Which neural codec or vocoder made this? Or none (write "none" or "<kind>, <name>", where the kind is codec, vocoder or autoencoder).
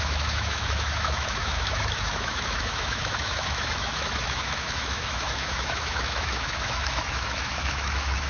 autoencoder, DAC-VAE